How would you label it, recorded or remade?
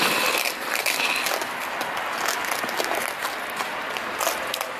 recorded